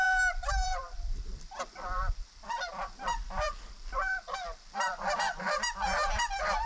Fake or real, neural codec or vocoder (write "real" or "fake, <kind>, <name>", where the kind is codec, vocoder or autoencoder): fake, vocoder, BigVGAN v2